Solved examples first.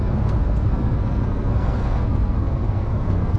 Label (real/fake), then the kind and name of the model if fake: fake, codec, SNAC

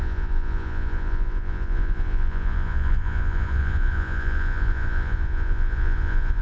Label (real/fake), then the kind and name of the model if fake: fake, vocoder, Vocos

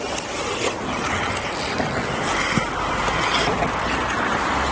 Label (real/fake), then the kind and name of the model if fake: real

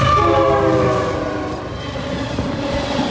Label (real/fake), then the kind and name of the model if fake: real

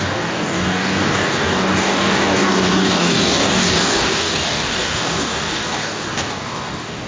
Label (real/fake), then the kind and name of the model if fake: fake, codec, DAC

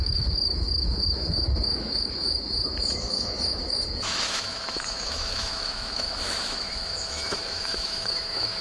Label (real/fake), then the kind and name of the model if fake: fake, autoencoder, DAC-VAE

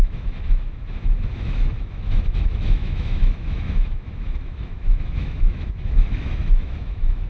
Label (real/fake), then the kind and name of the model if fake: fake, autoencoder, DAC-VAE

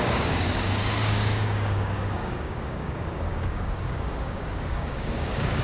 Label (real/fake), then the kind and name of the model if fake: fake, codec, DAC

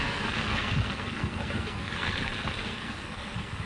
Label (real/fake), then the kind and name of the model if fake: fake, codec, SNAC